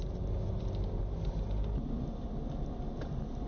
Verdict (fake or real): real